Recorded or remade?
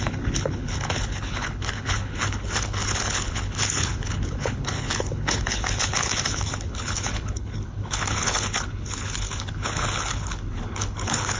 remade